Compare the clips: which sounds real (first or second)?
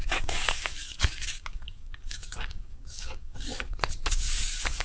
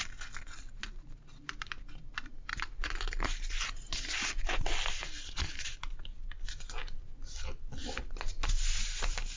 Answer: second